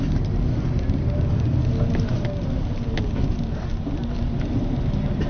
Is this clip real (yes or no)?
yes